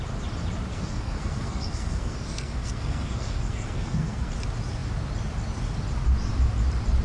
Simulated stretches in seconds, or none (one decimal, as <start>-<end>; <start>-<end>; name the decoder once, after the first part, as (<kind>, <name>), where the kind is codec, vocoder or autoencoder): 0.7-4.3 (codec, SNAC)